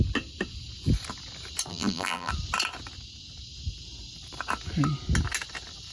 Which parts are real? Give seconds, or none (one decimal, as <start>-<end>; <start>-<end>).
0.0-1.7; 2.3-5.9